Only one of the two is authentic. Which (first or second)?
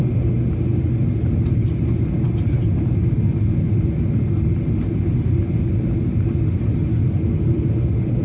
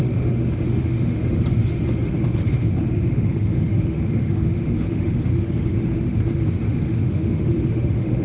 first